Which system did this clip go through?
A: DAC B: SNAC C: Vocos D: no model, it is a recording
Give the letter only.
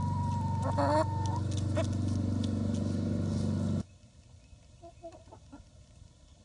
D